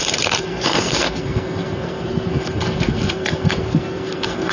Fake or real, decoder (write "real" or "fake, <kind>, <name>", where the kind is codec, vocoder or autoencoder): fake, codec, SNAC